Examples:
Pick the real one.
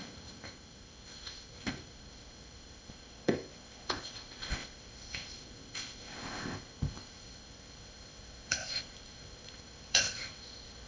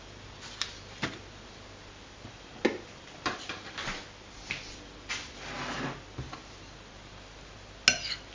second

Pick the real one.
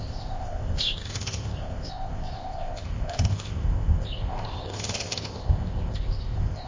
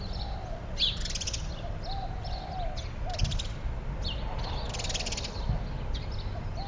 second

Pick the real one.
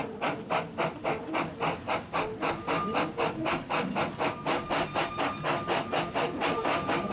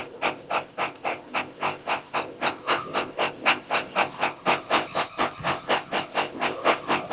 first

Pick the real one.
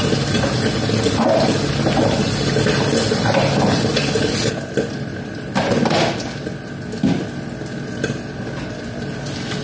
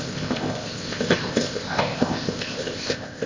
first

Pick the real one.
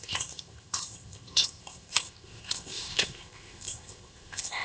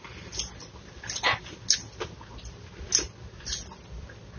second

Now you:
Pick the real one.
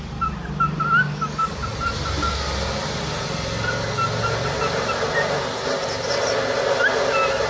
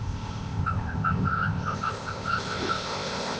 first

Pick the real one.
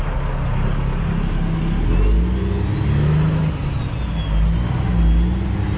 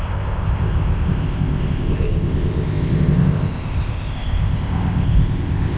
first